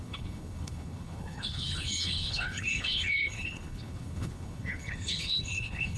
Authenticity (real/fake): fake